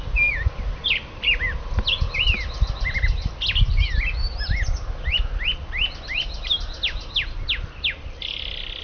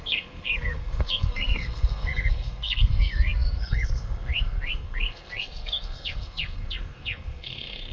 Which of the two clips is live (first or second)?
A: first